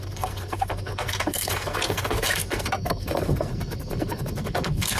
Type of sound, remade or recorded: remade